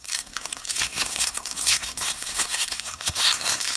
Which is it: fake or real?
fake